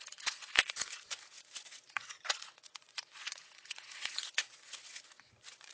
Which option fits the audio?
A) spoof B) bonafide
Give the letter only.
A